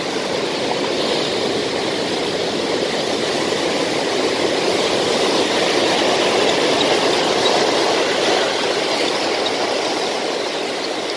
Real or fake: real